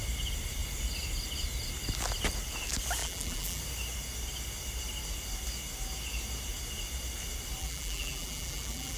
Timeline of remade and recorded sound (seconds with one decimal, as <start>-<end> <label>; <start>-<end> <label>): 0.0-3.0 recorded; 3.0-3.6 remade; 3.6-7.6 recorded; 7.6-9.0 remade